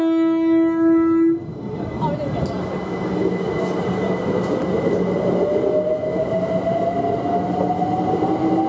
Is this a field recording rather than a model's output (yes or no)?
yes